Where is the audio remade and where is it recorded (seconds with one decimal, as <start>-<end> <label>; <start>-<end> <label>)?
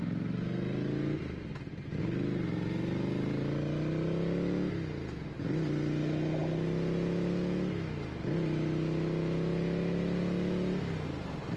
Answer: 0.0-11.6 recorded